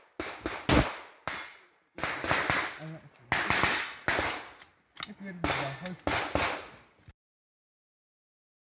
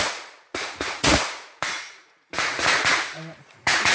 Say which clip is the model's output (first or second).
second